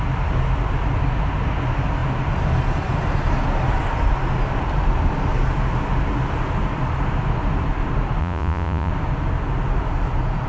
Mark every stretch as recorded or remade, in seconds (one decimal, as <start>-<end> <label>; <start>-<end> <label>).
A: 0.0-8.2 recorded; 8.2-8.9 remade; 8.9-10.5 recorded